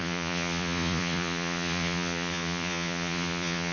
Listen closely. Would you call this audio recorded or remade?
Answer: remade